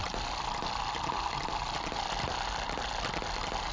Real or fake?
real